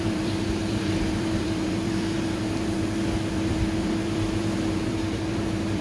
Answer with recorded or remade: remade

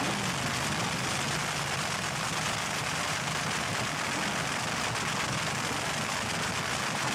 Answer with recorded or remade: recorded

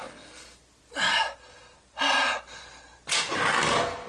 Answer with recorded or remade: recorded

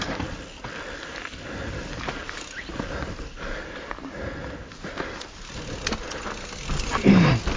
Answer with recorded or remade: recorded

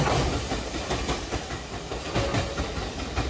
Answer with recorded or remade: remade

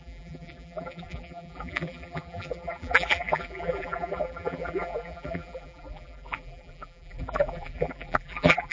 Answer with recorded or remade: remade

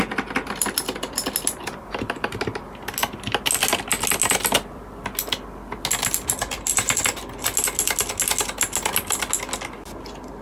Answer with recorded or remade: recorded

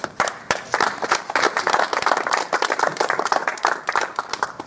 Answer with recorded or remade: remade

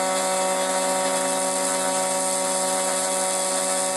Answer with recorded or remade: recorded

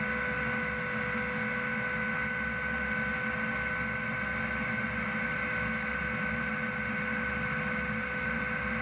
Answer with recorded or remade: recorded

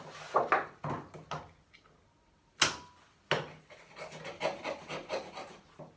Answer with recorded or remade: recorded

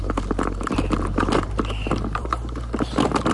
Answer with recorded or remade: recorded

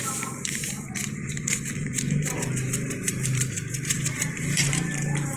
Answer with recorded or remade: remade